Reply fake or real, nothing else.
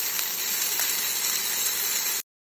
real